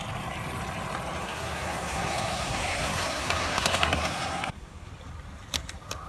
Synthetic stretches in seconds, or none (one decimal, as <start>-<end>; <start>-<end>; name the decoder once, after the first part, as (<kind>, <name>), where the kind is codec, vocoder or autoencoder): 1.2-4.9 (codec, SNAC)